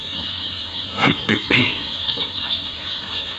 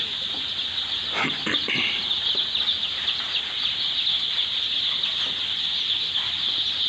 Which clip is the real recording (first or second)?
second